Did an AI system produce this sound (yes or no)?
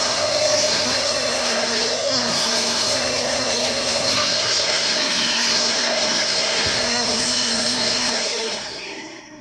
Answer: yes